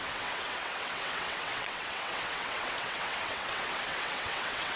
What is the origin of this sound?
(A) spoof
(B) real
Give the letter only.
A